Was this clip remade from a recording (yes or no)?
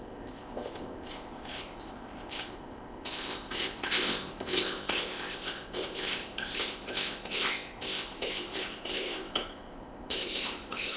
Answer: yes